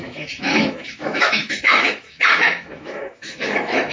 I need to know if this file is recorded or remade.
remade